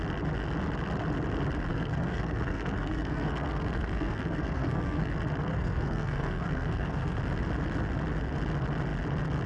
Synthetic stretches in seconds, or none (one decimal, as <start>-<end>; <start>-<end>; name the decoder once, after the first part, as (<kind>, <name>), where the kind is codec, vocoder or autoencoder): 1.7-5.1 (codec, SNAC); 5.5-7.2